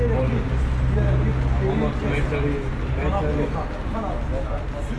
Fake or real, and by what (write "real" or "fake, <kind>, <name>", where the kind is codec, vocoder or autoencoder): real